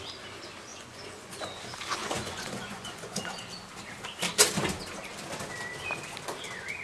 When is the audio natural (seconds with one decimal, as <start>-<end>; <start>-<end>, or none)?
0.0-0.7; 1.6-2.0; 3.4-6.8